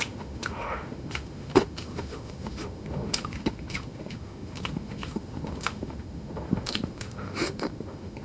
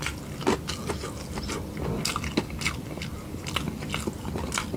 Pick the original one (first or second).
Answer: second